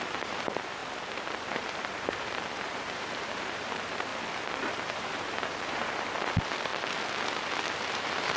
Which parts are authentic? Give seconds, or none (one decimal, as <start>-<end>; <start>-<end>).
0.8-1.5; 4.1-4.7; 6.7-7.9